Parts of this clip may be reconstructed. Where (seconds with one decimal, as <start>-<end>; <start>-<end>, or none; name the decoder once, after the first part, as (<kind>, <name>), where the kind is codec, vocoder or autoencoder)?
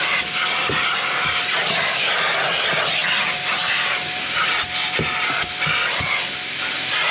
0.0-3.0 (vocoder, BigVGAN v2); 6.0-7.1